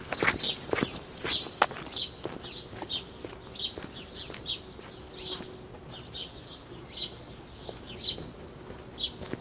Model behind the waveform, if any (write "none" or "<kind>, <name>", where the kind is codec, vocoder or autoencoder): none